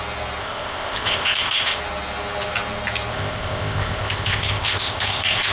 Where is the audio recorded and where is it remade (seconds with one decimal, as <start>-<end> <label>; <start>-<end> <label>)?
0.0-0.4 recorded; 0.4-1.8 remade; 1.8-3.1 recorded; 3.1-5.5 remade